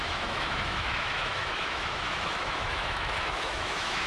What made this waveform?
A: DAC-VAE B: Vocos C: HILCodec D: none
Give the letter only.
A